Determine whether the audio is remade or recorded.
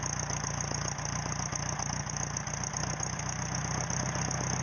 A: recorded